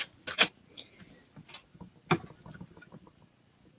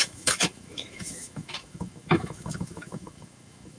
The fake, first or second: second